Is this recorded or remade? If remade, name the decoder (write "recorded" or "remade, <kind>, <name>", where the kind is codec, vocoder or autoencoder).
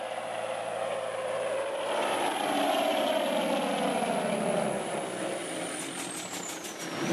recorded